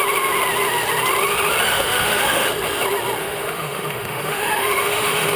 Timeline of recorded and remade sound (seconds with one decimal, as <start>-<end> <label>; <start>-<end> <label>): 0.0-1.7 recorded; 1.7-2.5 remade; 2.5-3.2 recorded; 3.2-5.4 remade